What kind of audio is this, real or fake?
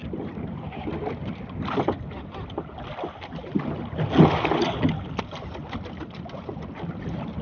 real